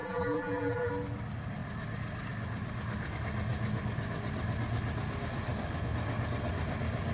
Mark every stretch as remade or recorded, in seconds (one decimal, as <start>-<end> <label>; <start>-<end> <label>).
0.0-0.9 remade; 0.9-7.1 recorded